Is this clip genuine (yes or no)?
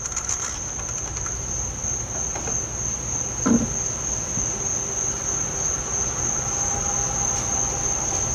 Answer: yes